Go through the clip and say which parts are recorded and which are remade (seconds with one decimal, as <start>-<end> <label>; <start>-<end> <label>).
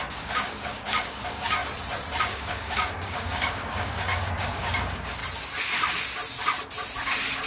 0.0-1.6 remade; 1.6-2.2 recorded; 2.2-5.2 remade; 5.2-7.5 recorded